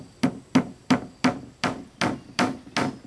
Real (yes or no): yes